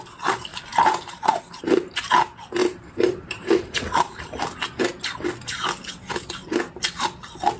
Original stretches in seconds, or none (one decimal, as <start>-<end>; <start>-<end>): 0.0-0.5; 1.4-2.6; 3.8-7.6